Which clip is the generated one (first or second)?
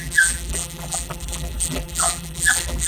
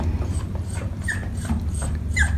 first